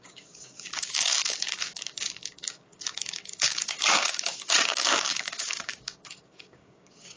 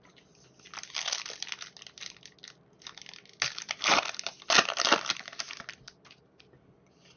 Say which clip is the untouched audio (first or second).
second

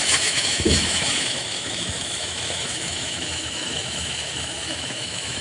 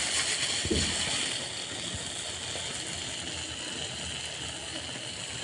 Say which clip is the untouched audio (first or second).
second